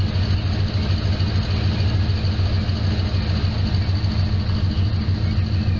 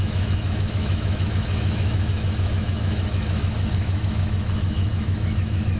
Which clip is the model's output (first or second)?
second